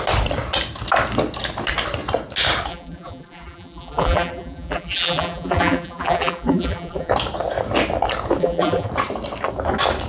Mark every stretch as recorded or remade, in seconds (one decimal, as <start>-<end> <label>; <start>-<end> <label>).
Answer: 0.0-2.7 recorded; 2.7-7.1 remade; 7.1-8.4 recorded; 8.4-8.9 remade; 8.9-10.1 recorded